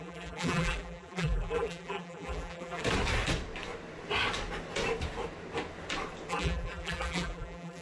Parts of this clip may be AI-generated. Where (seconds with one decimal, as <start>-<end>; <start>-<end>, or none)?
0.0-2.8; 6.3-7.8